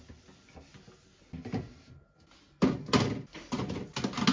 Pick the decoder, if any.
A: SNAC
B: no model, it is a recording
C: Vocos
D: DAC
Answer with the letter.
B